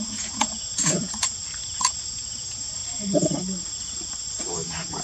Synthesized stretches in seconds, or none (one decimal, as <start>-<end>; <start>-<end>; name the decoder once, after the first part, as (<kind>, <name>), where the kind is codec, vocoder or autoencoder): 0.0-1.4 (vocoder, Vocos); 2.0-2.8; 4.4-5.0